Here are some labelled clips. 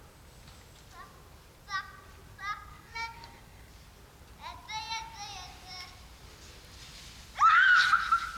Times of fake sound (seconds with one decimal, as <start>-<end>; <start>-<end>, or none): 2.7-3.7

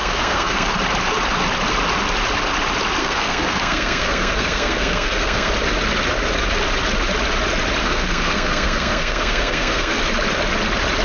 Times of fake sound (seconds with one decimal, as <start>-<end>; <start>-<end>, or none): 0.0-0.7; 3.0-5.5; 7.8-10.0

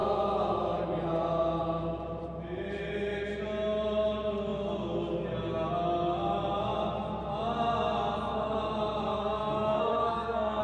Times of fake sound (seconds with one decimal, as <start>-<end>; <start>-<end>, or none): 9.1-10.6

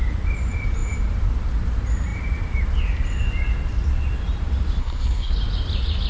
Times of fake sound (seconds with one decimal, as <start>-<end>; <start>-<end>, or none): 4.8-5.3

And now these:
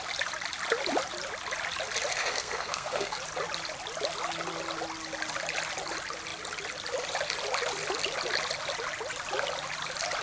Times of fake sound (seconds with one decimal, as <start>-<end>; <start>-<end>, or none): 2.1-3.2

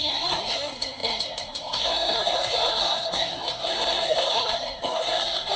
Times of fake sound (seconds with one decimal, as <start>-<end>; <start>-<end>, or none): 0.0-5.6

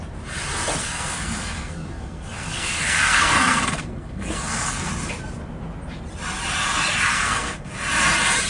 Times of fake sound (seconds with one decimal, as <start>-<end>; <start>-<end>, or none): 0.8-4.9; 7.1-7.7

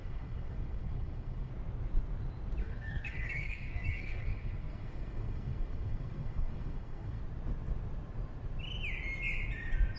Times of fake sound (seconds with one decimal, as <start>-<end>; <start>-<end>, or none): 0.0-1.5; 2.6-7.2